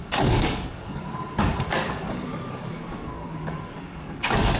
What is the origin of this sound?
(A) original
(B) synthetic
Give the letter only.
B